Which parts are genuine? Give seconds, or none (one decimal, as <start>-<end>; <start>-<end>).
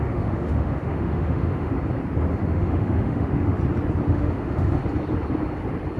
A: 1.7-2.3; 3.5-4.1; 4.8-6.0